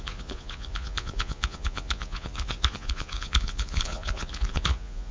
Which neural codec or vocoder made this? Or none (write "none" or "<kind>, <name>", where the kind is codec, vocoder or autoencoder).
vocoder, Vocos